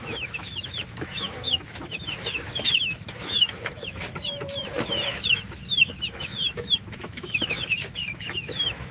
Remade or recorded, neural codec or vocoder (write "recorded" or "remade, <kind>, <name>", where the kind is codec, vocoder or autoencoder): remade, autoencoder, DAC-VAE